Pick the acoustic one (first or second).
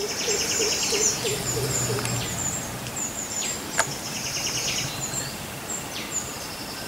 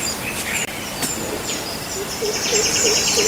second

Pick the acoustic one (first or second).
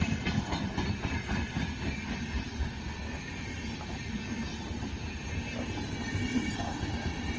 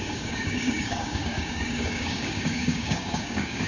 first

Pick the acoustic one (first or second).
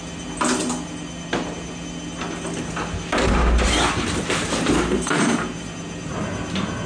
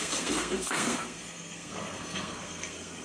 first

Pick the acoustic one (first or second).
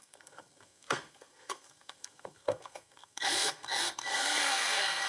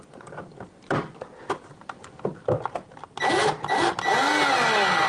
second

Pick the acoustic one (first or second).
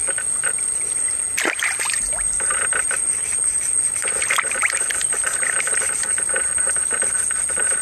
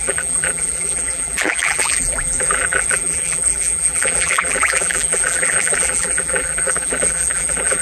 first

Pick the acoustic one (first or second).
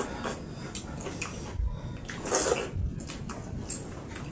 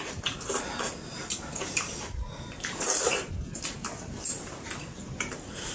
first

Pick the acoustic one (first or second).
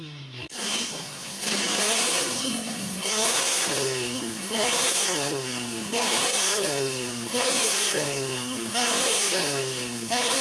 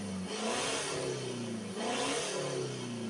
second